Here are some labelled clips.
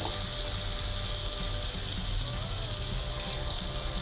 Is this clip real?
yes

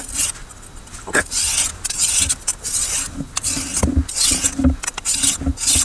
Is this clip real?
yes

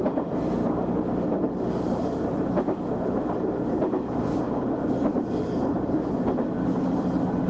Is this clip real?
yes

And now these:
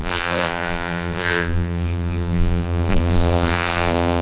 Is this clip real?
no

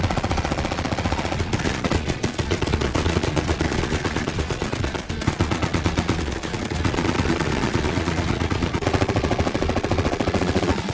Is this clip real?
no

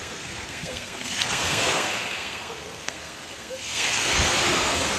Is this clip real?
no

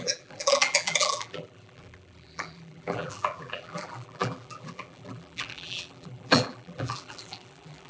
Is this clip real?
no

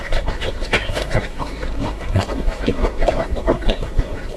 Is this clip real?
no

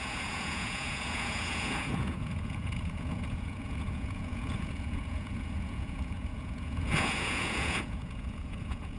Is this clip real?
no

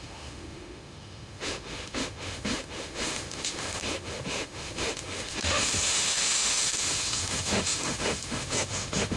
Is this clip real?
no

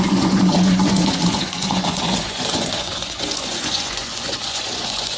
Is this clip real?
no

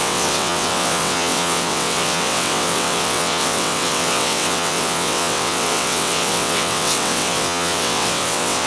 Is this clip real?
no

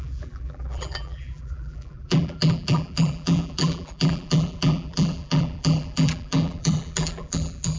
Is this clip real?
no